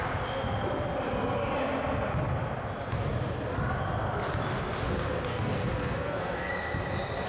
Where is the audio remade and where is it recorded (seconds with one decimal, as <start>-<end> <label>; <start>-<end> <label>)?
0.0-5.3 recorded; 5.3-6.5 remade; 6.5-7.3 recorded